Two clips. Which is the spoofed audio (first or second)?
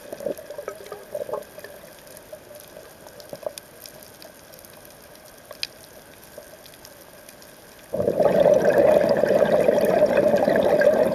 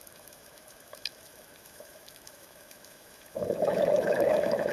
second